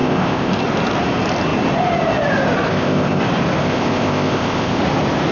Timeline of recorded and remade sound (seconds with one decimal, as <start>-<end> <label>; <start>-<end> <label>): 0.0-0.6 remade; 0.6-2.7 recorded; 2.7-3.2 remade; 3.2-3.6 recorded; 3.6-4.8 remade; 4.8-5.3 recorded